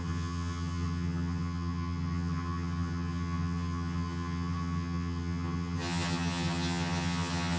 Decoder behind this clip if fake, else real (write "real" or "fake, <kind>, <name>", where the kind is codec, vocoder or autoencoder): fake, vocoder, HiFi-GAN